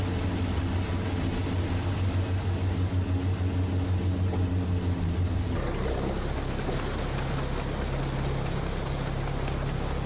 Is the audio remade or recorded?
recorded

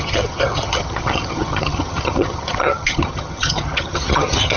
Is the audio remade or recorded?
remade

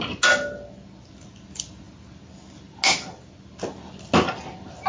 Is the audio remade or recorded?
recorded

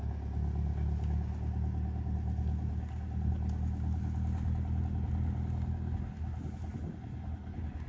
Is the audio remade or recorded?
recorded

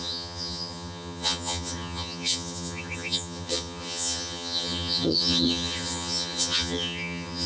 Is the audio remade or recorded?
remade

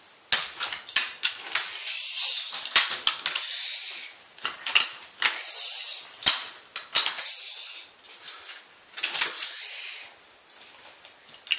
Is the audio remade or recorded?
recorded